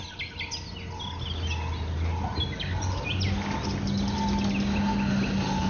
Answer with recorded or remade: recorded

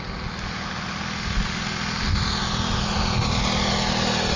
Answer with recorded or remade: recorded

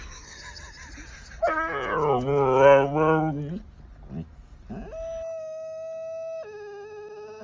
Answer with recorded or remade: recorded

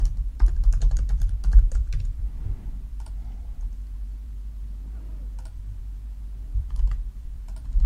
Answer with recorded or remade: remade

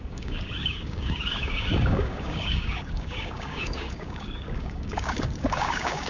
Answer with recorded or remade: remade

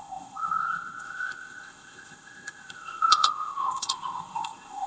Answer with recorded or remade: remade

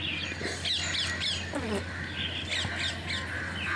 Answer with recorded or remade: recorded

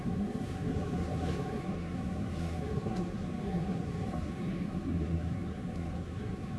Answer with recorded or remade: remade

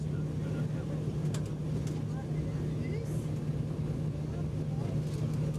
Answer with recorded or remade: recorded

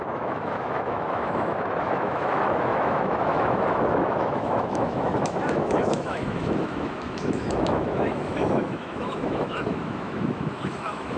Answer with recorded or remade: remade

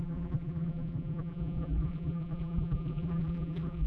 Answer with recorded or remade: remade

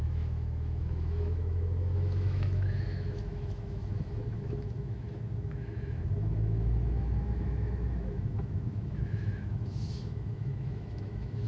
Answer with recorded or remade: remade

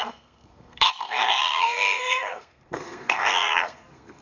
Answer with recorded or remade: remade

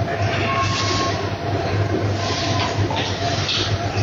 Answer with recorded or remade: recorded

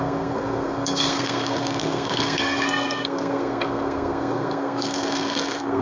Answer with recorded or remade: remade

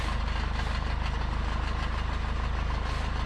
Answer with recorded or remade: recorded